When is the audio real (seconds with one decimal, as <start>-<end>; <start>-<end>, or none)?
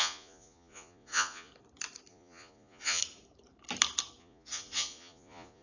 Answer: 1.5-2.1; 3.0-4.2